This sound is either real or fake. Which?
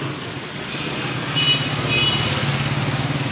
real